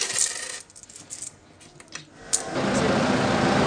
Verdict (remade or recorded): recorded